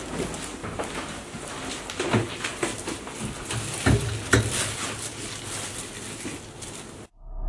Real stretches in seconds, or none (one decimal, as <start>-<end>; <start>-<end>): 0.0-0.6; 1.5-7.5